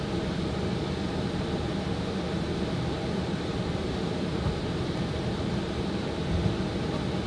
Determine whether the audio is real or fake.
real